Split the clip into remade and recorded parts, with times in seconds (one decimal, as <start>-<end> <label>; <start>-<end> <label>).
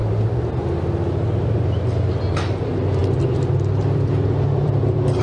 0.0-3.0 recorded; 3.0-5.2 remade